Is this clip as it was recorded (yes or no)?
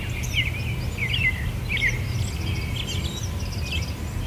yes